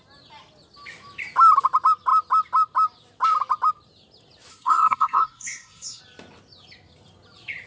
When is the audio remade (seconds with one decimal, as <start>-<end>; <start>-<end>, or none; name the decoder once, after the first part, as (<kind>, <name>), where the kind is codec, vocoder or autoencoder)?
4.5-6.0 (codec, SNAC)